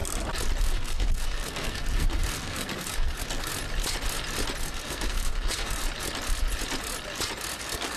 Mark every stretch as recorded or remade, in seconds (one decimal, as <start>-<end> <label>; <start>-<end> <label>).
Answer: 0.0-0.6 recorded; 0.6-3.5 remade; 3.5-4.6 recorded; 4.6-5.8 remade; 5.8-7.6 recorded; 7.6-8.0 remade